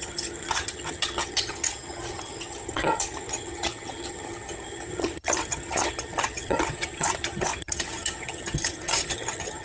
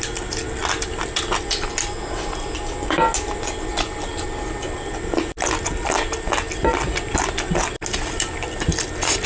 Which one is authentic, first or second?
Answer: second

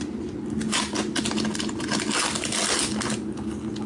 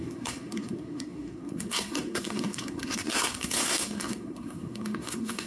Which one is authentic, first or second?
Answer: first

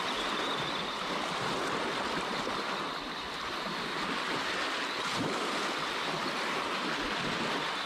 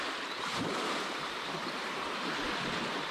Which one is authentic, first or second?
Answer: first